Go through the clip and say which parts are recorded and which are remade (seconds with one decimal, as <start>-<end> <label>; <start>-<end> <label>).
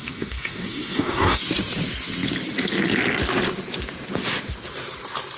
0.0-1.4 remade; 1.4-5.4 recorded